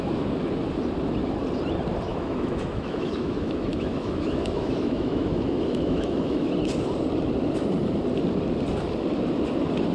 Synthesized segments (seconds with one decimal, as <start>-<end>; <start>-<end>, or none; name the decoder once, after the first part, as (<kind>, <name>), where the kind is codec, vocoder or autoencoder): 2.1-6.5 (autoencoder, DAC-VAE)